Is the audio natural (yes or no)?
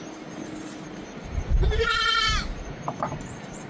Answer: no